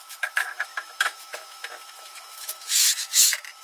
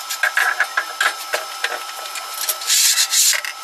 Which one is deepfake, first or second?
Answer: first